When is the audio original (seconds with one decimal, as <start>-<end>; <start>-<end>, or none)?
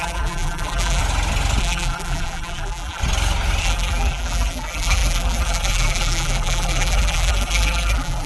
1.0-1.6; 3.0-3.6